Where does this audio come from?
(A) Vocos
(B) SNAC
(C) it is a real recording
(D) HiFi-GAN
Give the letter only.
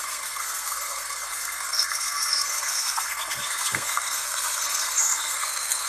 B